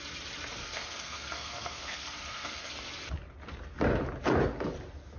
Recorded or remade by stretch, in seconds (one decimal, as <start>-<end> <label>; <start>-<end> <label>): 0.0-0.6 recorded; 0.6-2.7 remade; 2.7-5.2 recorded